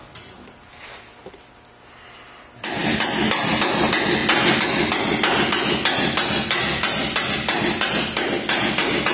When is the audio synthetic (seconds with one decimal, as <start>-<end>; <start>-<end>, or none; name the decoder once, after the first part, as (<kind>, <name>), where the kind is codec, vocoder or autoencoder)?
none